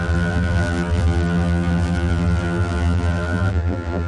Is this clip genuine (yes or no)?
no